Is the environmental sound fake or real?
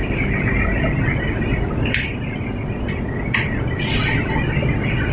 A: real